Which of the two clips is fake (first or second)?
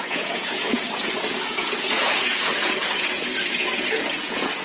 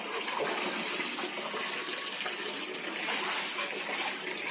first